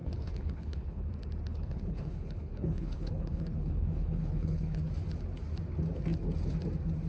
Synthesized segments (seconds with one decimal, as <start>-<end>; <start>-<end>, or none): 0.0-1.1; 1.5-4.8